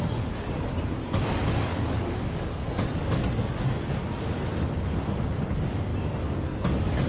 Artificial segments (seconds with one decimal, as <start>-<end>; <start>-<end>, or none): 1.0-4.0; 5.9-7.1